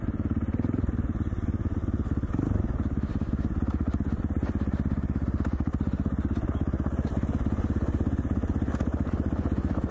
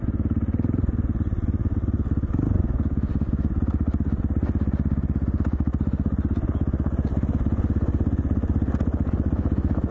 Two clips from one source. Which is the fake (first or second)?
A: first